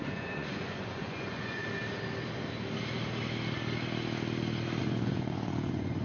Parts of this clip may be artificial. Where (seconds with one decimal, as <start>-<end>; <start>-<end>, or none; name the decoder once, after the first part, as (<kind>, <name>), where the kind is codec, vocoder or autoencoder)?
0.0-1.6 (vocoder, Vocos); 4.8-6.0